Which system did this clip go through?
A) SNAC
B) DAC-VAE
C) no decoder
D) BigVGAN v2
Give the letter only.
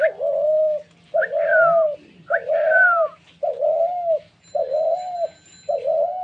C